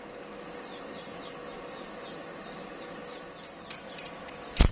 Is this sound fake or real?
real